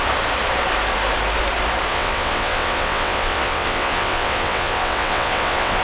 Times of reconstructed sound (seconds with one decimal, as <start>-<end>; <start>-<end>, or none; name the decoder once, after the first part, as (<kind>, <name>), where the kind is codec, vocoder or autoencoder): 1.9-5.8 (vocoder, WaveNeXt)